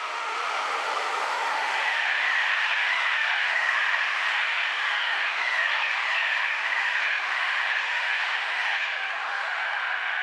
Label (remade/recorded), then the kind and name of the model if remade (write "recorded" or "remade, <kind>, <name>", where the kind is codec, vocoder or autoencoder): remade, autoencoder, DAC-VAE